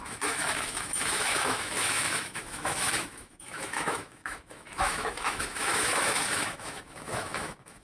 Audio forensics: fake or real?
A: fake